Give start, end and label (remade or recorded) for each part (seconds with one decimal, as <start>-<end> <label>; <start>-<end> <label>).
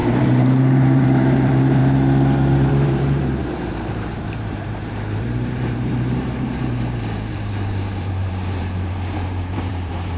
0.0-1.8 remade; 1.8-2.7 recorded; 2.7-10.2 remade